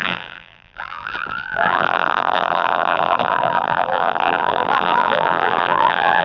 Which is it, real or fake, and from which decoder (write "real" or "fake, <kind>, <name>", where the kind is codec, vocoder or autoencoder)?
fake, vocoder, BigVGAN v2